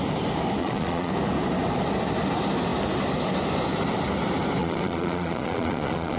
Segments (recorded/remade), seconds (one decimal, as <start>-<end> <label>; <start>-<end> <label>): 0.0-0.6 recorded; 0.6-1.1 remade; 1.1-4.6 recorded; 4.6-6.2 remade